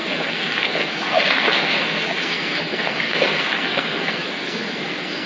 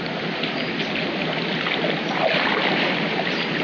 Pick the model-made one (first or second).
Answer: first